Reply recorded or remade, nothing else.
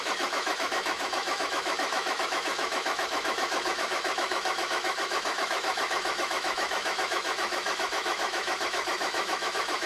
remade